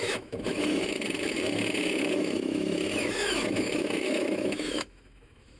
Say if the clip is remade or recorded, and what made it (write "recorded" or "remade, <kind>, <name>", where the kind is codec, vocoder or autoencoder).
remade, autoencoder, DAC-VAE